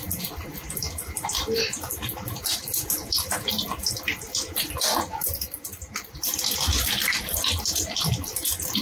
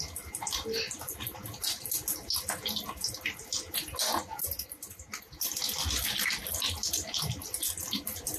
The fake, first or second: first